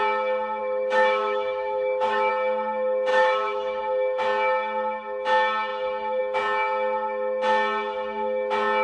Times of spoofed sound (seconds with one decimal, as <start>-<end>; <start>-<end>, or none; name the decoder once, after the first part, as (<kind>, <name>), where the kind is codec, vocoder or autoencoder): 0.6-2.3 (autoencoder, DAC-VAE); 3.1-3.8